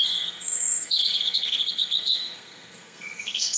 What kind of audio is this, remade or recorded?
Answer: remade